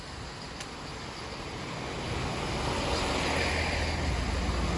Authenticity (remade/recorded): recorded